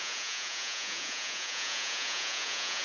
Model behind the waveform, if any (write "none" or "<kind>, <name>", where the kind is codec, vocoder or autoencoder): vocoder, Vocos